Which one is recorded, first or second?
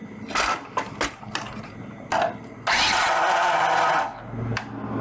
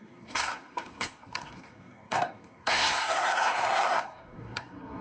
first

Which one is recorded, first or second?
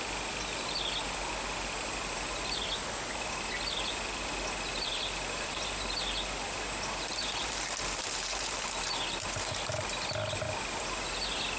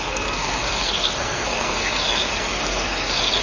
first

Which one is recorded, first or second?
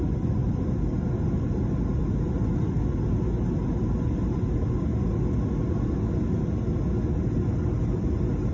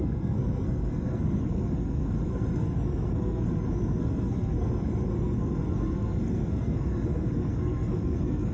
first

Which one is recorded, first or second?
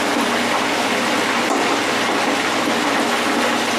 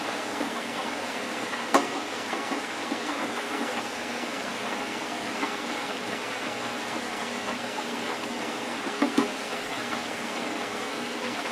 first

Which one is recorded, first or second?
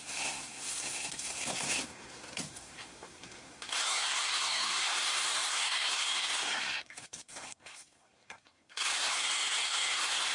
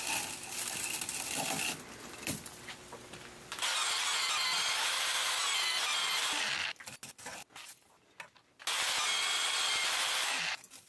second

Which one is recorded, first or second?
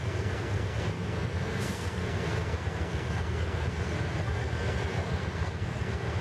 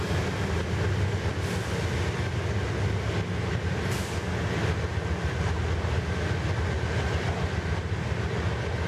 second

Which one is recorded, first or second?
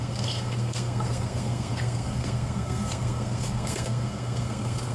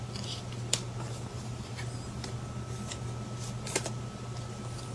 second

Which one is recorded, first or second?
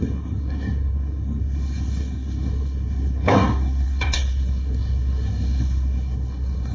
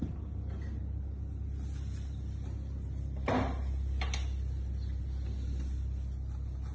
second